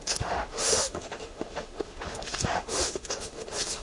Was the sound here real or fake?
fake